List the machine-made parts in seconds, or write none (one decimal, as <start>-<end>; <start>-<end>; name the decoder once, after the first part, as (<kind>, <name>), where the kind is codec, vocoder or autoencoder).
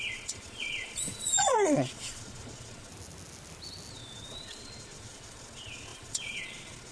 0.0-2.9 (vocoder, Vocos); 3.9-6.9